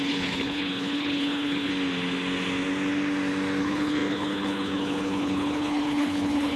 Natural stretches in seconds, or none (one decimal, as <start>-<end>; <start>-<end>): 1.7-3.6